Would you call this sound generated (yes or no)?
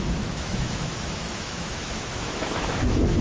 yes